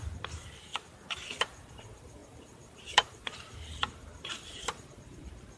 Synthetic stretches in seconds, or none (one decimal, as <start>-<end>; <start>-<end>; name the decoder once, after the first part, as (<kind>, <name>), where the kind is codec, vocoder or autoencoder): 0.0-0.7 (vocoder, BigVGAN v2); 1.7-5.6